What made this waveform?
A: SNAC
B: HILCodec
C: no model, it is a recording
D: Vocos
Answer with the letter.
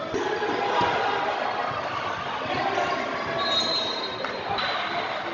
C